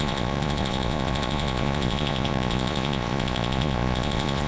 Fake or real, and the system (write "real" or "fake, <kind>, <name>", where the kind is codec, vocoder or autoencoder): fake, vocoder, Vocos